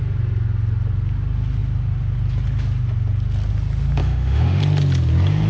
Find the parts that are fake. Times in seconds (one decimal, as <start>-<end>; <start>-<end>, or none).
4.0-4.6